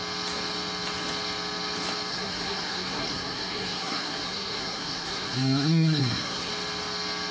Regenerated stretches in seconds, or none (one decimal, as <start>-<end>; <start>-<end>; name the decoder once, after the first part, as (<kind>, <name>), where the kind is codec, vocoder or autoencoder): 2.1-6.5 (codec, SNAC)